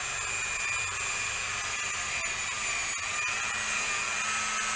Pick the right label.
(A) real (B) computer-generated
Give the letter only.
A